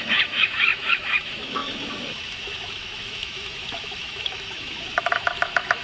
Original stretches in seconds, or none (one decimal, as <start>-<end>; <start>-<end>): none